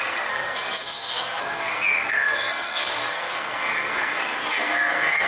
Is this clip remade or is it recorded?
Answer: remade